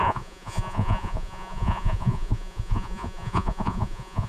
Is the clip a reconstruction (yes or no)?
yes